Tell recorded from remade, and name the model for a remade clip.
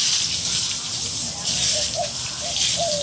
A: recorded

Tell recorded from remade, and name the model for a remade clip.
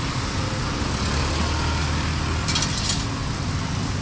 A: recorded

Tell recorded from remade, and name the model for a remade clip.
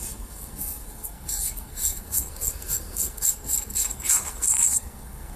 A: remade, codec, SNAC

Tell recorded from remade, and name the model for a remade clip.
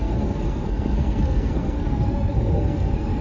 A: remade, codec, SNAC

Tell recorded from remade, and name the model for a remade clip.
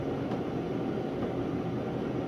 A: recorded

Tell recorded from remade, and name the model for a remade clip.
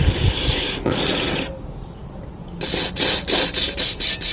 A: remade, vocoder, BigVGAN v2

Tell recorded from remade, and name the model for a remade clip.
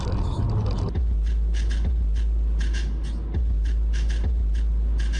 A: recorded